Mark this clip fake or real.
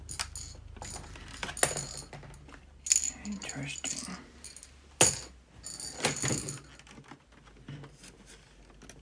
real